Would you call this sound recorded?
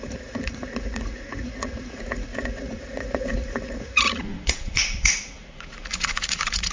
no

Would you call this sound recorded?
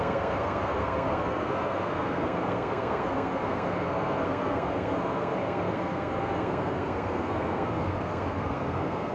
no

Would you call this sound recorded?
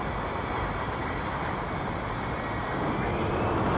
yes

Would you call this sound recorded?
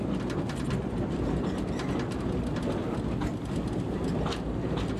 yes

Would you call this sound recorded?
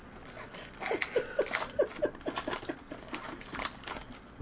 no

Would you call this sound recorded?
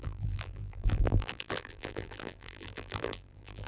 no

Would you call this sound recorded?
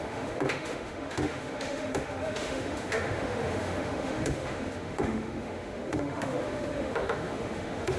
no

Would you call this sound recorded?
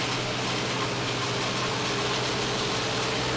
yes